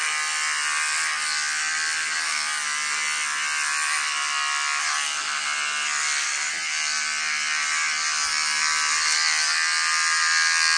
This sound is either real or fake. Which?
real